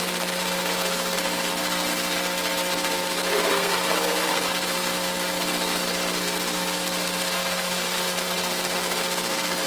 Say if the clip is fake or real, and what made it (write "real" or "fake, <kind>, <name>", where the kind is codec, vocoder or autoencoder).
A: fake, codec, SNAC